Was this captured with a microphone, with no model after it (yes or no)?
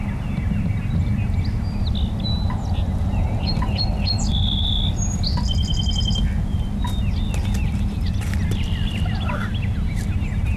yes